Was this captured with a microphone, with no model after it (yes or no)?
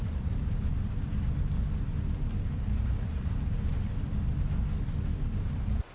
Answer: yes